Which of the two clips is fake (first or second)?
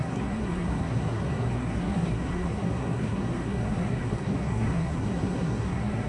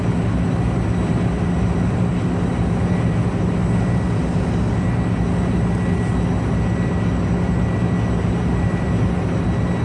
first